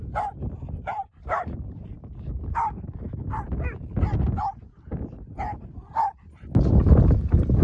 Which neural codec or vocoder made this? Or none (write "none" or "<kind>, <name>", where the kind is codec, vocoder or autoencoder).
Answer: none